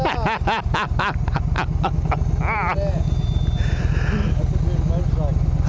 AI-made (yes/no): no